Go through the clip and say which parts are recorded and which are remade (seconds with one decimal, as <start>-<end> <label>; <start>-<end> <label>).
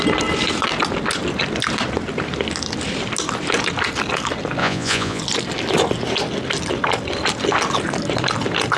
0.0-4.6 recorded; 4.6-5.2 remade; 5.2-8.8 recorded